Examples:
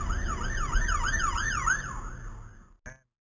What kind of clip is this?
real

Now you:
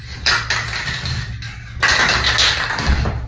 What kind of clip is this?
real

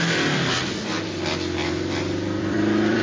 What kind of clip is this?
fake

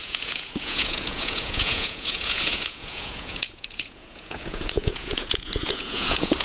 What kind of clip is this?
fake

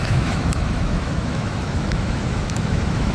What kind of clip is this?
fake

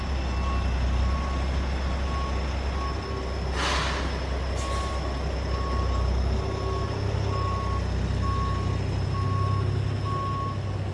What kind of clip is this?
real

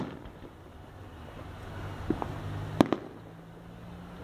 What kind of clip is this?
real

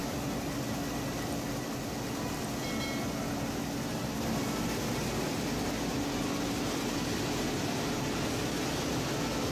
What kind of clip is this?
real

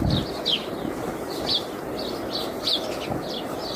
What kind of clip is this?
real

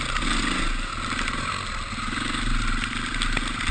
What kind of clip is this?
real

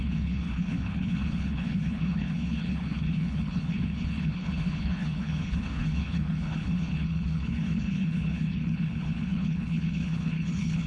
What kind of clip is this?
fake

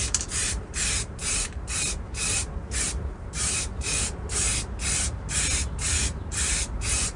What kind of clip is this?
fake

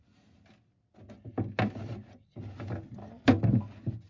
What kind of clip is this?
real